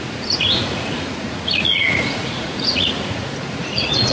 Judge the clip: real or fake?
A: fake